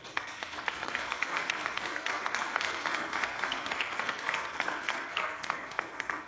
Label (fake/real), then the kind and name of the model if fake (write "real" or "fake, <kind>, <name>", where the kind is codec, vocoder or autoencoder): fake, codec, SNAC